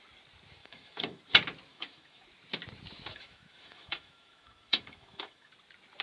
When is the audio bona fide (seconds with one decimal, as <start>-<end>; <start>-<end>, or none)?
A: 0.0-0.6; 1.2-1.7; 2.2-3.1; 5.5-6.0